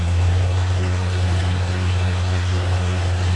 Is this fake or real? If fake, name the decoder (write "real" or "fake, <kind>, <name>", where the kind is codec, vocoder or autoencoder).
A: fake, codec, SNAC